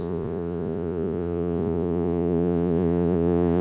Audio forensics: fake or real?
fake